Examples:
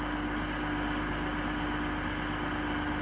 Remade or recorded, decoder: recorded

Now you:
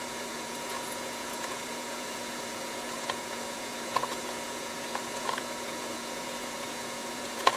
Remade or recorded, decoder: remade, vocoder, Vocos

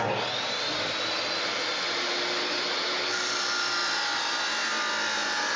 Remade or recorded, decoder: recorded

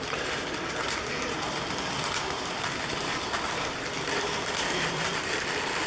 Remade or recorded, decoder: remade, vocoder, BigVGAN v2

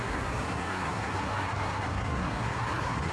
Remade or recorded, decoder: remade, codec, SNAC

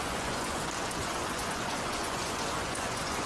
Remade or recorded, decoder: remade, vocoder, Vocos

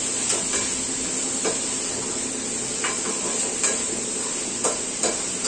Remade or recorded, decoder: recorded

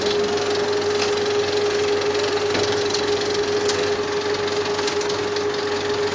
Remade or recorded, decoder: recorded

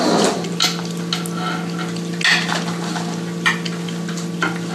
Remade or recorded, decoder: recorded